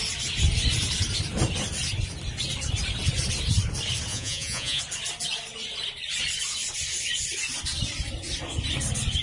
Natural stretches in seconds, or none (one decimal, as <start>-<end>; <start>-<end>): 0.0-4.1; 4.8-9.2